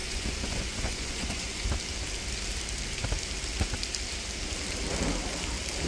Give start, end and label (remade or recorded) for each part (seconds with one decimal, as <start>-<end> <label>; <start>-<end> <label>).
0.0-1.7 remade; 1.7-5.9 recorded